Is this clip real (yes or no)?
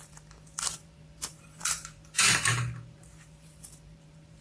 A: no